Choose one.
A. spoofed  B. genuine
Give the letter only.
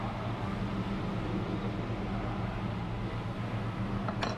B